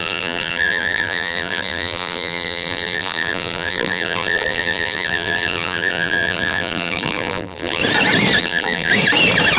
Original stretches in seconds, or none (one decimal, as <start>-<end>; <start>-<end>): 7.8-8.4; 8.9-9.6